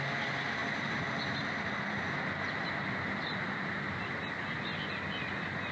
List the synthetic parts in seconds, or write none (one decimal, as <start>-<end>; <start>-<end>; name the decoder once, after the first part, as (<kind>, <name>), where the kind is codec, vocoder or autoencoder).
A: none